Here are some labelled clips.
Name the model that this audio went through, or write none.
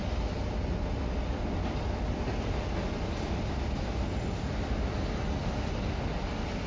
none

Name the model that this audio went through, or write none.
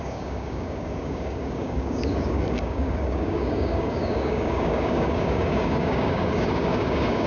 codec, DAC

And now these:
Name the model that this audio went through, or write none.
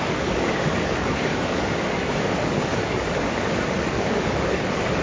codec, DAC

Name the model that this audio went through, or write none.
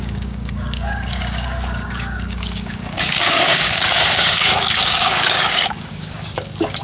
codec, DAC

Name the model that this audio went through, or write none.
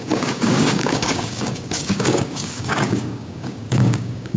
codec, DAC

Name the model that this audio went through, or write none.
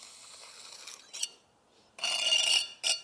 none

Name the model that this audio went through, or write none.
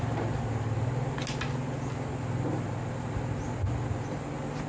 none